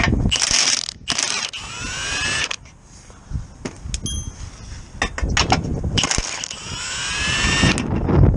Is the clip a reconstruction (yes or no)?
no